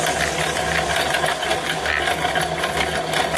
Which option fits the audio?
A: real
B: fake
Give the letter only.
A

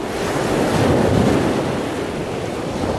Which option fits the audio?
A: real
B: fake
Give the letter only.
A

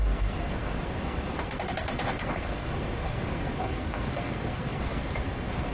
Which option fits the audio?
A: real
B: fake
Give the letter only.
B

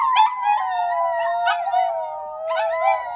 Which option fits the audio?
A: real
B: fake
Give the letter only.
A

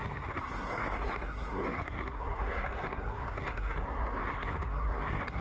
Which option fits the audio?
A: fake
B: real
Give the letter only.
A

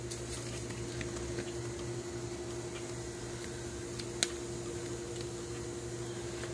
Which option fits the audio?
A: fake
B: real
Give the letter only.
B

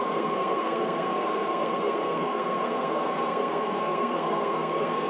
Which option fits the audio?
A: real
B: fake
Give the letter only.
B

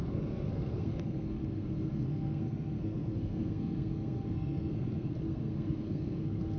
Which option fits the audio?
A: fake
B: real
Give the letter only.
A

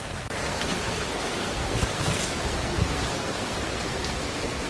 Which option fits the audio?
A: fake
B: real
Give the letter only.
A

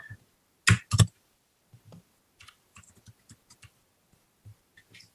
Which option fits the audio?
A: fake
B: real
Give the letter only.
B